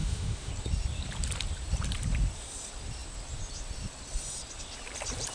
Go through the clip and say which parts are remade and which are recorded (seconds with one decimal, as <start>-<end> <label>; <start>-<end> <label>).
0.0-0.5 remade; 0.5-5.3 recorded